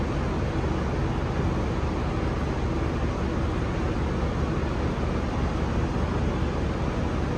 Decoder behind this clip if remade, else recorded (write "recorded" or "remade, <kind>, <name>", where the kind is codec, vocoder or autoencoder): recorded